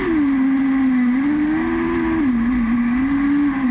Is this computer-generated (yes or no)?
no